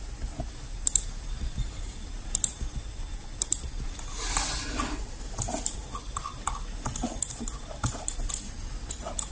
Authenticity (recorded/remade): recorded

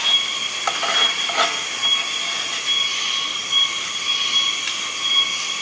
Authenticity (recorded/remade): recorded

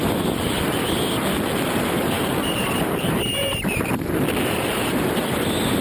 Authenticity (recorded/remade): recorded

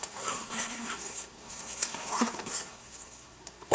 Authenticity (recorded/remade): remade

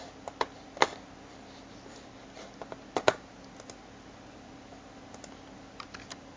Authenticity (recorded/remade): recorded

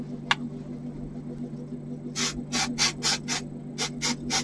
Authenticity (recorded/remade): recorded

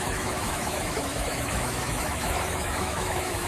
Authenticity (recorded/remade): remade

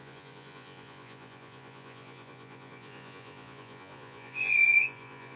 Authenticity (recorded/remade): remade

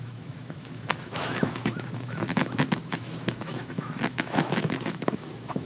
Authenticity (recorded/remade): remade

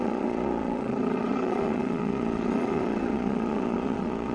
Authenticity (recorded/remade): remade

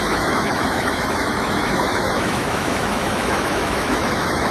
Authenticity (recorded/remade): remade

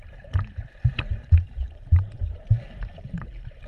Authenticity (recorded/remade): remade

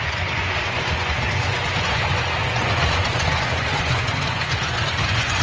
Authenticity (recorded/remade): remade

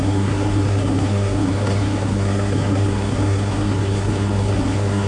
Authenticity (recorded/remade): remade